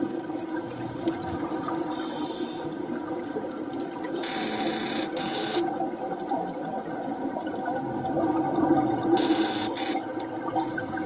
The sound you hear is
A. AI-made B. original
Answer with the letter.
B